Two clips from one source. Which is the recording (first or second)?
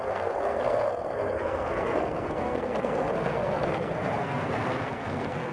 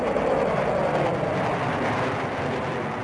second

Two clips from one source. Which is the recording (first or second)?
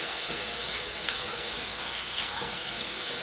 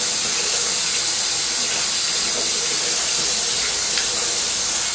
second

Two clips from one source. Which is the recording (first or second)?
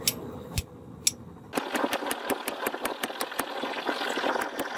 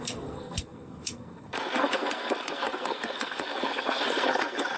first